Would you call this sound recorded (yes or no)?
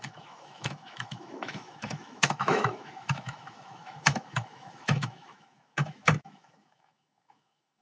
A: no